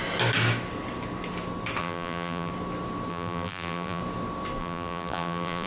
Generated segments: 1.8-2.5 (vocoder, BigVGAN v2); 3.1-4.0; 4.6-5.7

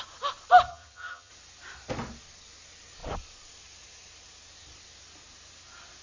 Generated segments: 0.7-1.3 (vocoder, HiFi-GAN)

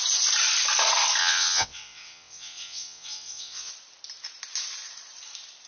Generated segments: 1.2-3.7 (vocoder, WaveNeXt)